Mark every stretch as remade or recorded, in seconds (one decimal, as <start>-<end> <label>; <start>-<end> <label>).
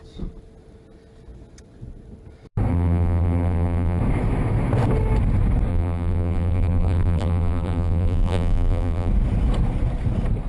0.0-2.7 recorded; 2.7-4.0 remade; 4.0-5.7 recorded; 5.7-9.1 remade; 9.1-10.5 recorded